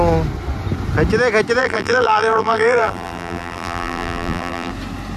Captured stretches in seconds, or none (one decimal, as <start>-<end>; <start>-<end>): 0.0-1.6; 4.7-5.2